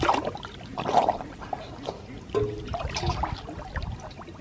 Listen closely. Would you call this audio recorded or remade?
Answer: recorded